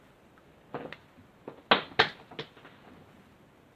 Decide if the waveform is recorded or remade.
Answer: recorded